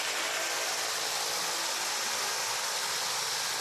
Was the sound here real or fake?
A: real